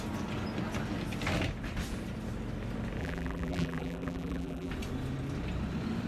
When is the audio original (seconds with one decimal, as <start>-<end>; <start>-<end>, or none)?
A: 0.0-3.0; 4.7-6.1